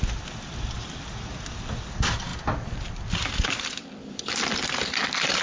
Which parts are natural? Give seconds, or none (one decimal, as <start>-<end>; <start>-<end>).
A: 0.0-2.3; 4.2-5.4